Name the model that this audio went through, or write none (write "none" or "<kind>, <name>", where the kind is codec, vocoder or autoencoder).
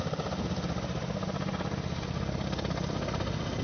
none